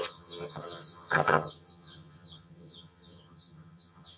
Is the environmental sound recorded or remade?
remade